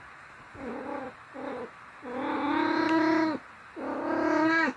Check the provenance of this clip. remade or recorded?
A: recorded